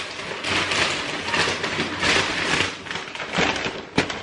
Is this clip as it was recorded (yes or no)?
yes